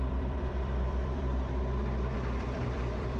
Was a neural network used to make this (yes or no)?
yes